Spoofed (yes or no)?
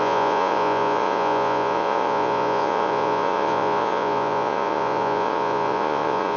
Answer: yes